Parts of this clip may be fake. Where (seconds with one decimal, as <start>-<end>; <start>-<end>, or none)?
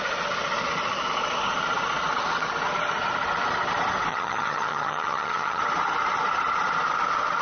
4.1-5.6